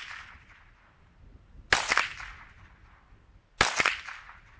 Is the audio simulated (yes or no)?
no